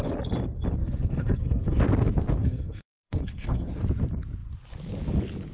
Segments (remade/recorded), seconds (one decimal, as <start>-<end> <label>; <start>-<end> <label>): 0.0-0.8 recorded; 0.8-1.8 remade; 1.8-2.4 recorded; 2.4-3.8 remade; 3.8-5.5 recorded